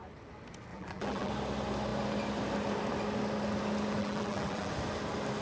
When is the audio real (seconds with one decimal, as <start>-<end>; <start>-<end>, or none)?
0.0-0.7; 1.3-4.0; 4.7-5.4